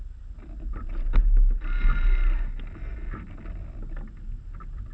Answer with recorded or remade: recorded